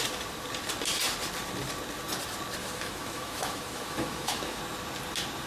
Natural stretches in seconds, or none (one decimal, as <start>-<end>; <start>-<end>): 0.0-2.6; 4.6-5.5